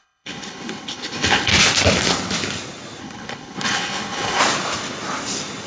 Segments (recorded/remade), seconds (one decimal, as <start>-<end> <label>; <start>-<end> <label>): 0.0-1.5 remade; 1.5-3.0 recorded; 3.0-4.4 remade; 4.4-5.7 recorded